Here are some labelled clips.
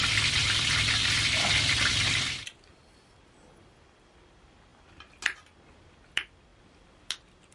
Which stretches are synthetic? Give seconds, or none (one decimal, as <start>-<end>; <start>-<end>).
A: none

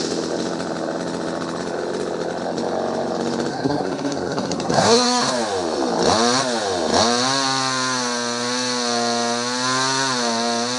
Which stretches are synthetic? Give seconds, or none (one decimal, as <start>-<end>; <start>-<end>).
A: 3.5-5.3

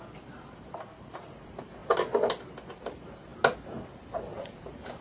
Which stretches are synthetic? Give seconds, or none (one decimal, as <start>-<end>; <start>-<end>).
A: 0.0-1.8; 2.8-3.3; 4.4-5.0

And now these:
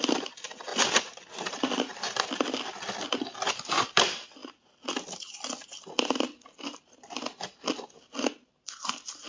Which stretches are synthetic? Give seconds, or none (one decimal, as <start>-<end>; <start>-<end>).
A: 0.0-0.7; 3.5-4.4; 8.7-9.3

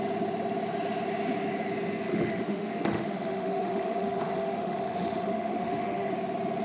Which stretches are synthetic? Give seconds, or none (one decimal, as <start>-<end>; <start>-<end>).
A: 2.1-6.1

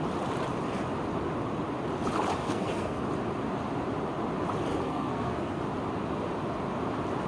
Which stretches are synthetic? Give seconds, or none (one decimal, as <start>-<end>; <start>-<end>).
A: 2.4-3.0; 4.7-5.6

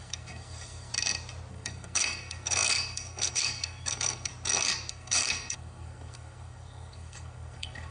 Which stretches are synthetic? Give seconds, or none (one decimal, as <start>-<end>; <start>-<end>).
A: 0.0-0.9; 1.5-4.3; 4.9-7.9

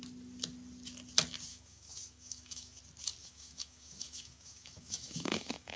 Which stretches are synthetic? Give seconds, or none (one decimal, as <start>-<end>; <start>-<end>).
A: 1.5-2.8; 3.2-5.8